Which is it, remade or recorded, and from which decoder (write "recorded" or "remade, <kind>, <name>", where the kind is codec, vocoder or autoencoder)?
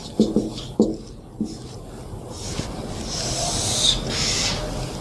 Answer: recorded